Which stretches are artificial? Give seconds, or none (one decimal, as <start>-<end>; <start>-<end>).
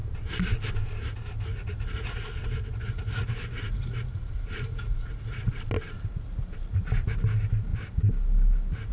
1.5-5.5